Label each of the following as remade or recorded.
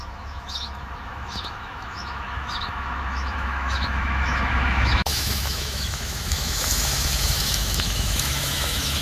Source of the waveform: remade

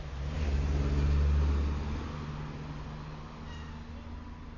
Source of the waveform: recorded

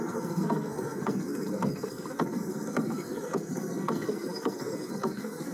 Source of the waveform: remade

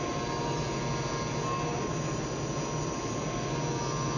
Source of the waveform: recorded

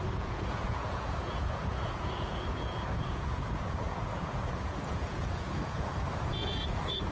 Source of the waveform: remade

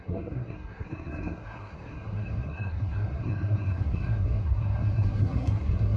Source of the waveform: remade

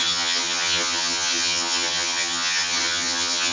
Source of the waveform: remade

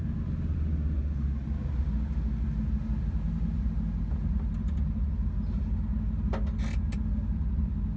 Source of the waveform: recorded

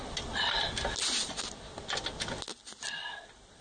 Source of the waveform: recorded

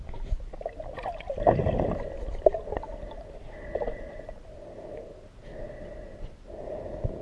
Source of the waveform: recorded